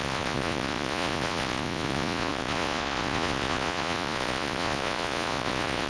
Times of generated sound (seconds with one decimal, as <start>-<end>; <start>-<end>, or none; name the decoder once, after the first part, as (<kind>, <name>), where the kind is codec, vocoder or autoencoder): 0.0-5.9 (vocoder, Vocos)